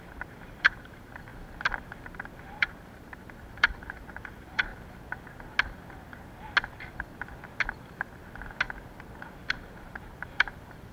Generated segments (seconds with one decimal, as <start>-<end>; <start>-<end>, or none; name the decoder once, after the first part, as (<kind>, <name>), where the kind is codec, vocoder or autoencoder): 0.0-1.3 (vocoder, BigVGAN v2); 2.4-4.7; 9.5-10.9